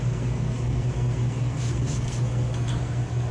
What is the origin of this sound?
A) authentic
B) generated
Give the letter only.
B